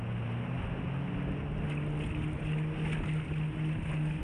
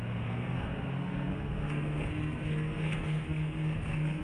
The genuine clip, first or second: first